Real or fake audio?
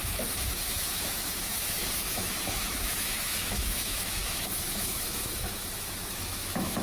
fake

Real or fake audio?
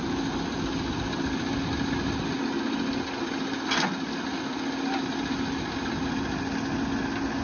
real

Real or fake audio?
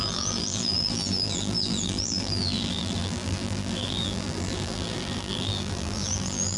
fake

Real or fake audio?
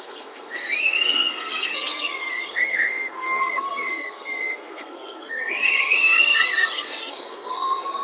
fake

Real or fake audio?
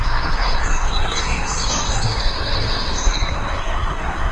fake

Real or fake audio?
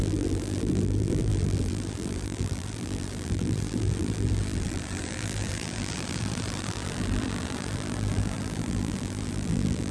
fake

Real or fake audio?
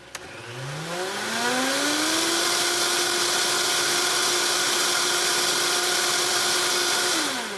real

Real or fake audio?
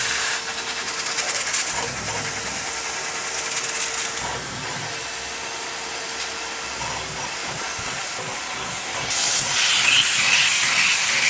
real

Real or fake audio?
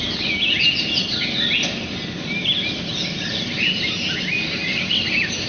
real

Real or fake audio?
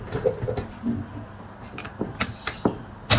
real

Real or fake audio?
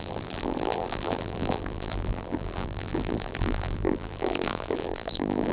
fake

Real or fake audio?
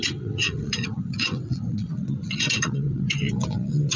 fake